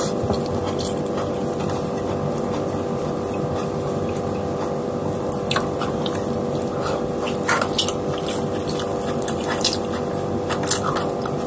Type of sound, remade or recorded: recorded